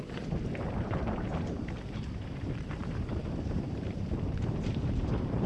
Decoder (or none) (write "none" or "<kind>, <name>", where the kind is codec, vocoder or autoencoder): vocoder, BigVGAN v2